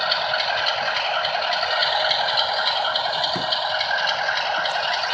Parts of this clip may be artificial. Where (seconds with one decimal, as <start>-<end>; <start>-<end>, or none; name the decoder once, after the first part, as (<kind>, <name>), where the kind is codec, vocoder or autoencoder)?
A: none